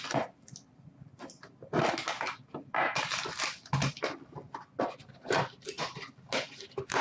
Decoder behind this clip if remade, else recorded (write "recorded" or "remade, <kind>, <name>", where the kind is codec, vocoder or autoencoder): recorded